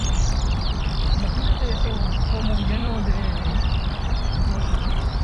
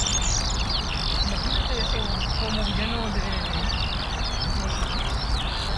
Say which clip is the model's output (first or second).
first